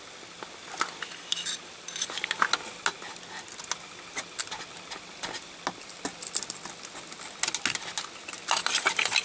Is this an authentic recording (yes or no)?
yes